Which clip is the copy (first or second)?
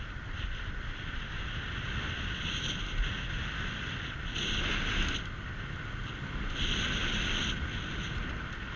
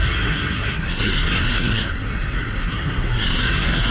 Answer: second